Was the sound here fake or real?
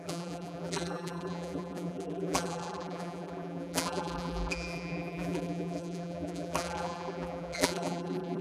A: fake